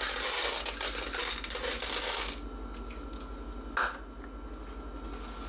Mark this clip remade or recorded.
recorded